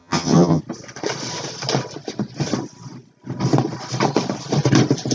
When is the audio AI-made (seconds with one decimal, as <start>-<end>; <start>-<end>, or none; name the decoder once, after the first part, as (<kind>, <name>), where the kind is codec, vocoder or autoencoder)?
0.0-0.6 (vocoder, HiFi-GAN)